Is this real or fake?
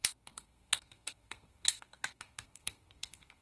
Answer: fake